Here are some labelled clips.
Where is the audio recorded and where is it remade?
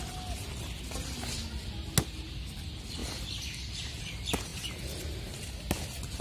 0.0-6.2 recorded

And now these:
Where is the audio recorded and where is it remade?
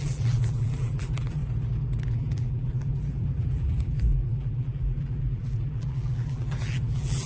0.0-1.4 remade; 1.4-2.1 recorded; 2.1-7.3 remade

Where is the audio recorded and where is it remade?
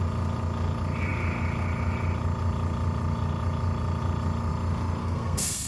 0.0-5.0 recorded; 5.0-5.7 remade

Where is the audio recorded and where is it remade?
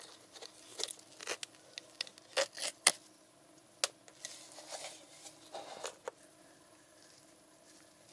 0.0-8.1 recorded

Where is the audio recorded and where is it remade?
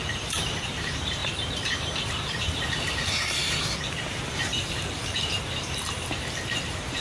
0.0-1.2 remade; 1.2-2.1 recorded; 2.1-3.4 remade; 3.4-4.1 recorded; 4.1-7.0 remade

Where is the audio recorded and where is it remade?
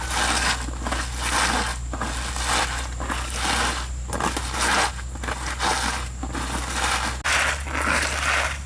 0.0-8.7 recorded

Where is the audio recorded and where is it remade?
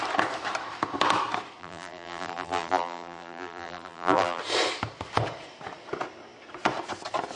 0.0-1.6 recorded; 1.6-4.4 remade; 4.4-7.4 recorded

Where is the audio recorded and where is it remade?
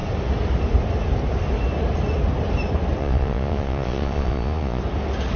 0.0-3.0 recorded; 3.0-4.8 remade; 4.8-5.4 recorded